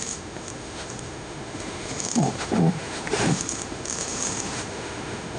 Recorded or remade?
remade